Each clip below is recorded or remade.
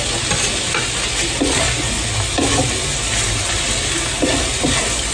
recorded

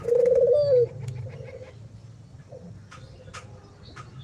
recorded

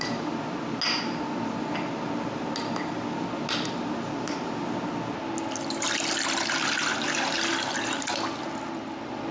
recorded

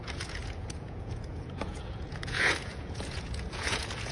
remade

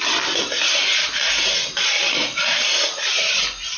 recorded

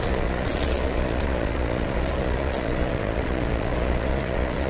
remade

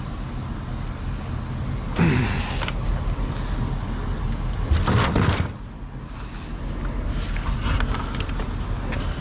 recorded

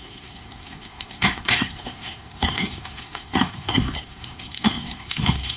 remade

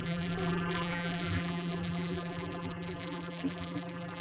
remade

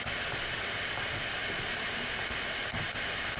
recorded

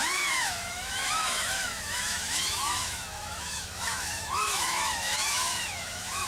remade